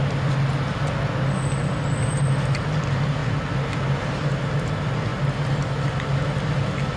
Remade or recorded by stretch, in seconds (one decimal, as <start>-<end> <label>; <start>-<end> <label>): 0.0-7.0 recorded